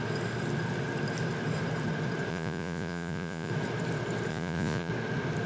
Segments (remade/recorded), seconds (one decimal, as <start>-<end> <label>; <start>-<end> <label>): 0.0-2.3 recorded; 2.3-3.5 remade; 3.5-4.3 recorded; 4.3-4.9 remade; 4.9-5.5 recorded